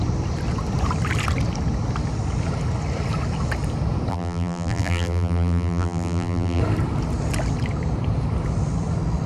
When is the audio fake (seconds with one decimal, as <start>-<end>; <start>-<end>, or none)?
4.1-6.6